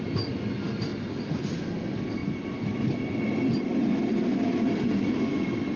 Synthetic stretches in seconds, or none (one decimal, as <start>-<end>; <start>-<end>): 0.9-1.4; 2.2-3.2